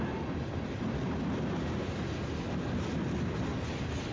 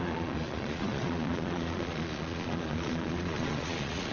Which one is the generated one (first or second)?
second